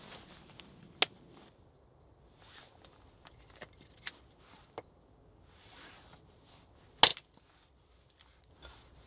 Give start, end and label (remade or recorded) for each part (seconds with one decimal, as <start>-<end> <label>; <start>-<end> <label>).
0.0-9.1 recorded